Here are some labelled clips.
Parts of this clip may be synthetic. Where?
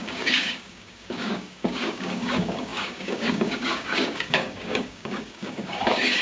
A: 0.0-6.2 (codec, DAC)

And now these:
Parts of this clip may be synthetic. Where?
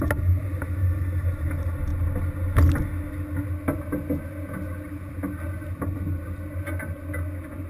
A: none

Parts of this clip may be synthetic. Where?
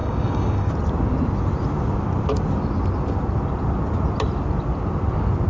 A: 0.0-0.7 (codec, DAC)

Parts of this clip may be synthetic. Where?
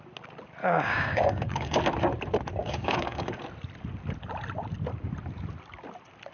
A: 0.6-1.8 (codec, DAC); 2.6-3.4